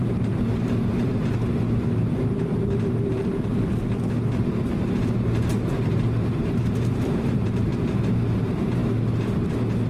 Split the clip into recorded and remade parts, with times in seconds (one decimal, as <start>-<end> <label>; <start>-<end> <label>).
0.0-3.2 remade; 3.2-4.3 recorded; 4.3-8.8 remade; 8.8-9.9 recorded